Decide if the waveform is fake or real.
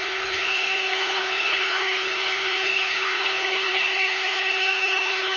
fake